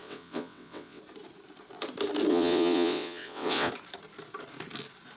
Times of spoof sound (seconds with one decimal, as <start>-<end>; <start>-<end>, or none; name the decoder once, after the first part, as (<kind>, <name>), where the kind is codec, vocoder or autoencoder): 0.0-1.0 (vocoder, WaveNeXt); 2.3-3.7